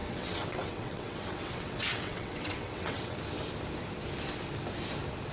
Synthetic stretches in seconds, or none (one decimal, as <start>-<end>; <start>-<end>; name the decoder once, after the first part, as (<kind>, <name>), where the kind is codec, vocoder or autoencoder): 0.0-3.2 (vocoder, WaveNeXt)